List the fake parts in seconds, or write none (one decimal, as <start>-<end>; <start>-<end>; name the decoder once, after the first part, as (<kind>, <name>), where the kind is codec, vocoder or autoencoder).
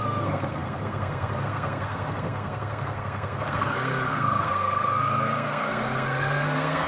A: 0.0-6.9 (codec, SNAC)